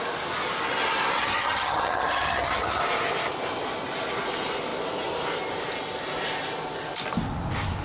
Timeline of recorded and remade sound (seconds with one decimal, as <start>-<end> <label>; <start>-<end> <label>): 0.0-1.2 recorded; 1.2-2.8 remade; 2.8-7.8 recorded